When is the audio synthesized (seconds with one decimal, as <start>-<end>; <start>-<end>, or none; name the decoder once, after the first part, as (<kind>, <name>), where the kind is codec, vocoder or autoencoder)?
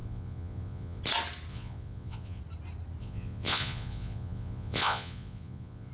0.0-1.0 (vocoder, Vocos); 1.5-2.4; 3.0-5.9